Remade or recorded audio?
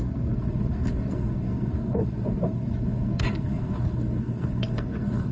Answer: remade